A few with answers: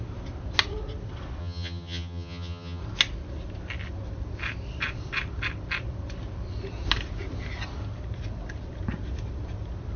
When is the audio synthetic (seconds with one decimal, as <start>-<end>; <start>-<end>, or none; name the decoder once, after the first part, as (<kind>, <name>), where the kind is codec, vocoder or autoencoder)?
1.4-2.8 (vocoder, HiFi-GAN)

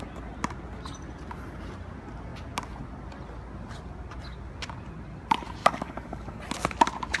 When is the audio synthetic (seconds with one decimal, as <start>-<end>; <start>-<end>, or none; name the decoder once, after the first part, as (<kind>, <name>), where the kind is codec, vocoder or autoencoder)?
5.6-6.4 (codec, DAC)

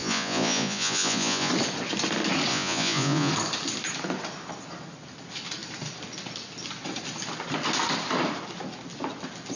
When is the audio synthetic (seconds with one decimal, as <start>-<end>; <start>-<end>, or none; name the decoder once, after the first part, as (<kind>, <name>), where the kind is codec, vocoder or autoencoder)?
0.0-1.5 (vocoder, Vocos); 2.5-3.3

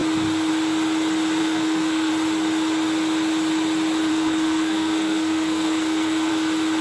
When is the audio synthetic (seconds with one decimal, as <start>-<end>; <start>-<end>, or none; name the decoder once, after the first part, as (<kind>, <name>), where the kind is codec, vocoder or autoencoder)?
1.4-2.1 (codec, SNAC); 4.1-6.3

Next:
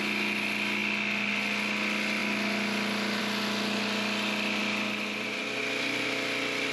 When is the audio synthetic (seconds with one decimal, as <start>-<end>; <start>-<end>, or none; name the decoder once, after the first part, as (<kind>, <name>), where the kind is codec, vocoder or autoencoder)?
none

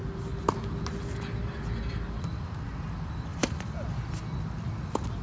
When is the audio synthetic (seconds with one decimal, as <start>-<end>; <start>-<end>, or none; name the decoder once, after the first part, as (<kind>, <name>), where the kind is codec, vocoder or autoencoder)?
3.3-4.2 (vocoder, BigVGAN v2)

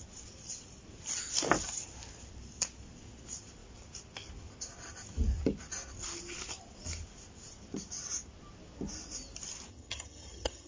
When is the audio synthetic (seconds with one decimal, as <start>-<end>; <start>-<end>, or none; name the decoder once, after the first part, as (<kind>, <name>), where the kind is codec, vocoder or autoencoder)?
9.7-10.7 (vocoder, HiFi-GAN)

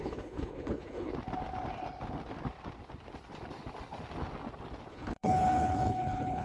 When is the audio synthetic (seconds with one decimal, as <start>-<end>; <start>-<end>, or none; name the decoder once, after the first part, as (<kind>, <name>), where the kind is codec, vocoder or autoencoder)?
0.0-1.1 (codec, HILCodec); 4.9-6.4